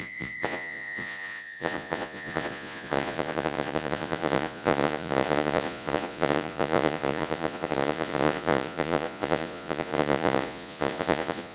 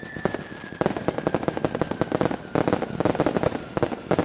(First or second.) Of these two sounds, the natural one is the second